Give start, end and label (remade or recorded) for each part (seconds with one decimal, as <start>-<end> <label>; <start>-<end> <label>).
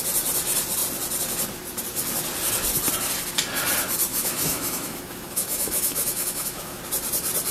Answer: 0.0-4.1 recorded; 4.1-6.8 remade; 6.8-7.5 recorded